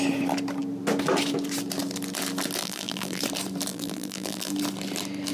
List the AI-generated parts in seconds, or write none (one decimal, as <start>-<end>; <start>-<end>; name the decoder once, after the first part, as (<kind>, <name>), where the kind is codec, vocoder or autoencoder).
2.6-3.2 (vocoder, BigVGAN v2); 3.7-4.5